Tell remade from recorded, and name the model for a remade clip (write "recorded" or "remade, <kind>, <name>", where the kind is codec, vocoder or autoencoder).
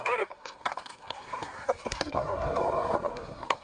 remade, codec, SNAC